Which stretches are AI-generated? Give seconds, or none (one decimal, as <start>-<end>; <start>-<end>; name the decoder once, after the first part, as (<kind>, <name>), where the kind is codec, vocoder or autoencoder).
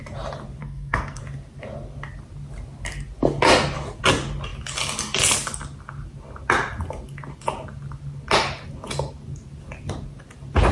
0.6-1.2 (codec, SNAC)